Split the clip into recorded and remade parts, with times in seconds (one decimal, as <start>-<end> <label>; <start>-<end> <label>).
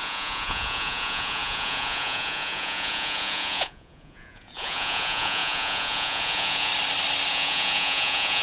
0.0-6.7 remade; 6.7-7.3 recorded; 7.3-8.4 remade